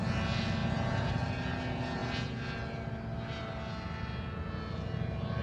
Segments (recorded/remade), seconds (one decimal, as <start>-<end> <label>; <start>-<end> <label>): 0.0-5.4 recorded